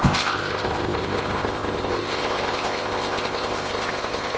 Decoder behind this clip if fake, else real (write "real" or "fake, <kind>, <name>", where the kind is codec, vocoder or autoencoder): fake, codec, ZipCodec